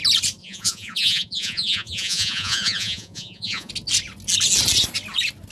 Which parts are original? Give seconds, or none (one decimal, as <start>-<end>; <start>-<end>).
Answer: 0.0-0.4; 3.7-5.5